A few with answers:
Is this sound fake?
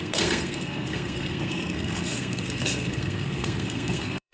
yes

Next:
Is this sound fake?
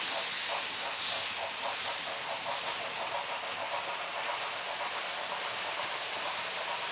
no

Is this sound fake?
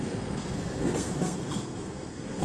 yes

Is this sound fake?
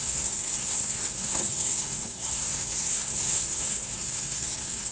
yes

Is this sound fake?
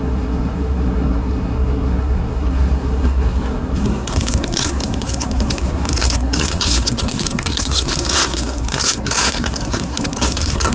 yes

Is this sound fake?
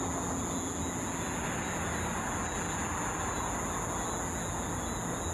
no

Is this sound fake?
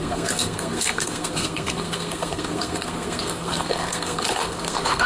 yes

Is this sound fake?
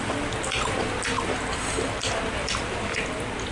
no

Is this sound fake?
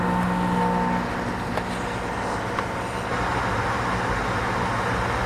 no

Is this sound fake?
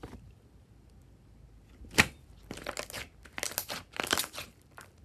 no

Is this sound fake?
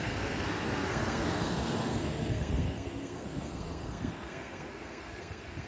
yes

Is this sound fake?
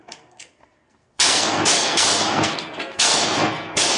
yes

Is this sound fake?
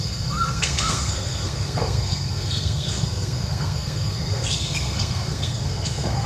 yes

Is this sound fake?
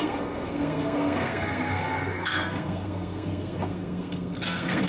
yes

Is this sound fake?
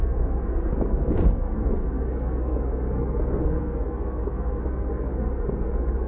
yes